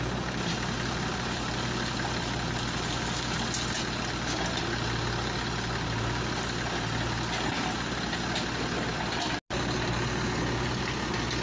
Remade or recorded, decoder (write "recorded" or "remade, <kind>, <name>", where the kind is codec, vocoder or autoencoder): recorded